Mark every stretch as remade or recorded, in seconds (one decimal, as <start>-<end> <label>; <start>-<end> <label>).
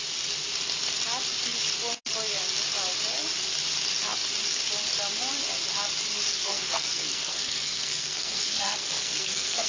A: 0.0-6.3 recorded; 6.3-9.7 remade